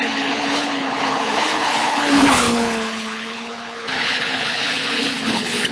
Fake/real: fake